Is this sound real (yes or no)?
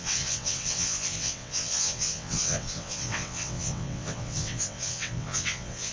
no